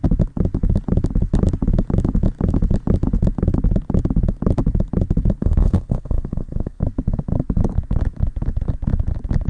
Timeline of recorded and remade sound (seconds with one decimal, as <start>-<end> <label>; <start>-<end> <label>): 0.0-5.4 recorded; 5.4-6.8 remade; 6.8-9.5 recorded